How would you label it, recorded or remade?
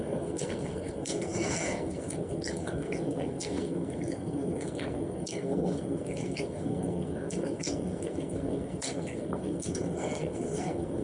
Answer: remade